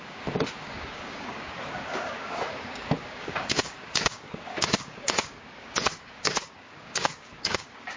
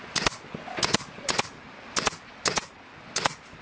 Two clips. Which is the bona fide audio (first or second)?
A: second